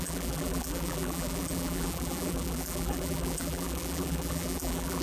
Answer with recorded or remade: remade